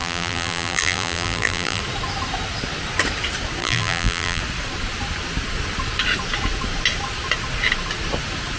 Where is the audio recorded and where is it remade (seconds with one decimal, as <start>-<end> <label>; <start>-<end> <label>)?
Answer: 0.0-1.8 remade; 1.8-3.6 recorded; 3.6-4.4 remade; 4.4-8.6 recorded